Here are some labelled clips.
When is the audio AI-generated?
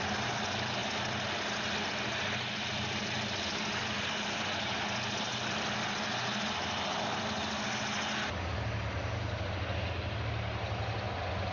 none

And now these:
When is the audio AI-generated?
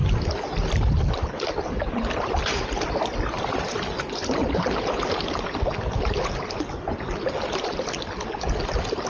none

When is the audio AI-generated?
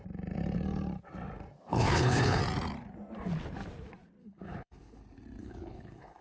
1.7-2.4 (codec, HILCodec); 4.2-5.0; 5.4-6.2